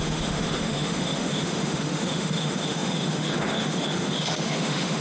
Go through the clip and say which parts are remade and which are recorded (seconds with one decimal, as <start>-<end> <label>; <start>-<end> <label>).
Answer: 0.0-5.0 remade